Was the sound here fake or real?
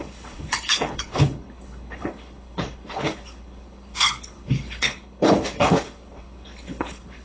fake